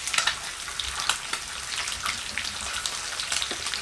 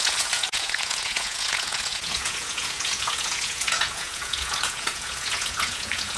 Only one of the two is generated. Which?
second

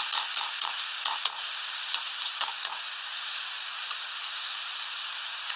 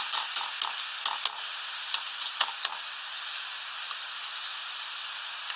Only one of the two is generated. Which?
first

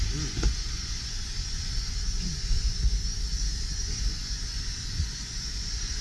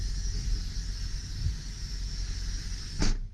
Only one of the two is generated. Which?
first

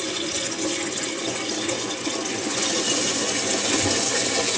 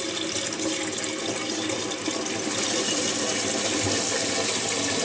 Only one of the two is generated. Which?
first